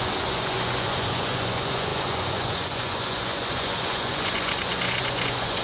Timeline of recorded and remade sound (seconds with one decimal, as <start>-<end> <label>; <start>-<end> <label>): 0.0-5.6 remade